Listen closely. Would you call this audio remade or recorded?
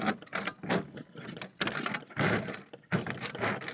recorded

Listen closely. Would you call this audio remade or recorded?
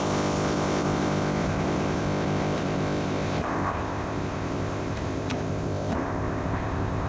remade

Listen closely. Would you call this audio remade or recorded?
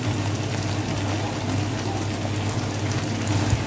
recorded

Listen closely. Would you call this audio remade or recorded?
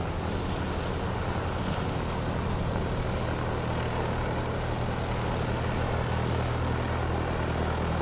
recorded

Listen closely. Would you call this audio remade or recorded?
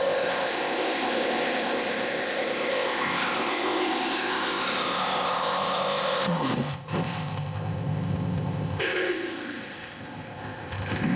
remade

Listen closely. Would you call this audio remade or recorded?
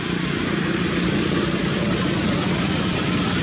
recorded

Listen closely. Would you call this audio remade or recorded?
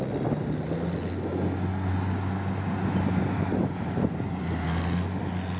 recorded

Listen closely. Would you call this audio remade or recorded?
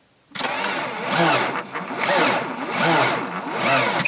recorded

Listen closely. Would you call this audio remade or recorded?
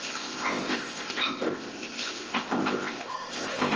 remade